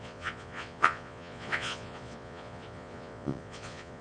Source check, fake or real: fake